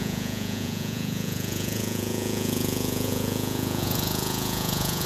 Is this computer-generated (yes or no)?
yes